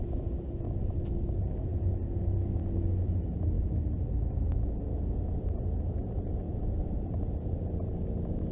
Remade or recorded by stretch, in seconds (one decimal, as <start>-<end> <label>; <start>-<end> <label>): 0.0-6.0 recorded; 6.0-7.6 remade; 7.6-8.5 recorded